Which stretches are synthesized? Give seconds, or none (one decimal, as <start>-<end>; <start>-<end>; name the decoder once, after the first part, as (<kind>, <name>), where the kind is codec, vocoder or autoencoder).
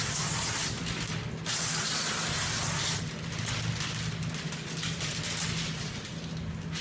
none